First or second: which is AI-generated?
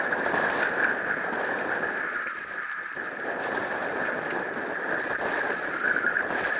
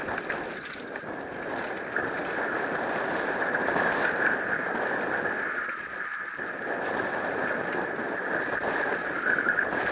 first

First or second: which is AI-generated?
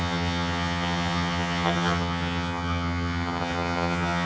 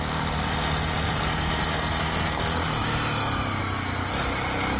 first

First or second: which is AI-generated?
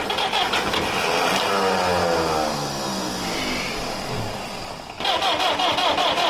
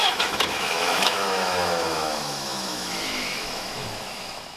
second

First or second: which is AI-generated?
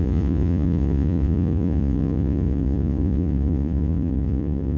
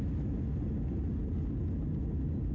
first